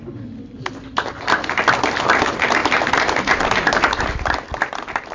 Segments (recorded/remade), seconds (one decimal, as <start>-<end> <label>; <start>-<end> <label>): 0.0-5.1 recorded